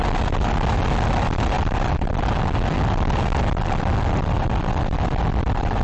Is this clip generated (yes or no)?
no